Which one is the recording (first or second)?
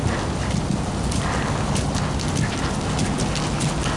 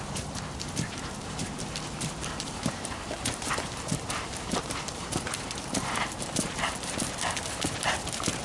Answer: first